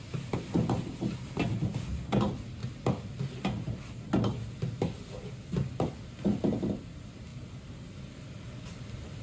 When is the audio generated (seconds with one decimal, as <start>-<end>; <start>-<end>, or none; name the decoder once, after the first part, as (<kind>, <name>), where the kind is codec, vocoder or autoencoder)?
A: none